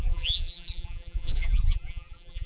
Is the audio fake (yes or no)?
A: yes